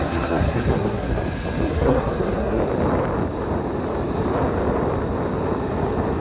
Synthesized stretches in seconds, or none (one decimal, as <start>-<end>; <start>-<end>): 0.0-1.1; 1.7-2.6